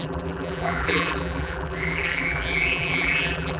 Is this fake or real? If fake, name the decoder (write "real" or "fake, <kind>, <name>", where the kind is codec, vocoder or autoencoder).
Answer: fake, vocoder, BigVGAN v2